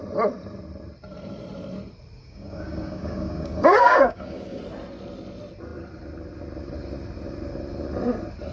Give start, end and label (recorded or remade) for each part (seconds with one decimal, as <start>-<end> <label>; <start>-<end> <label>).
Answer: 0.0-2.2 recorded; 2.2-4.6 remade; 4.6-8.5 recorded